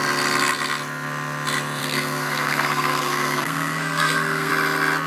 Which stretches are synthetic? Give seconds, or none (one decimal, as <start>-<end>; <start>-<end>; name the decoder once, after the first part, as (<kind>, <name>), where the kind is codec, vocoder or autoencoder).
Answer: 1.8-4.5 (codec, SNAC)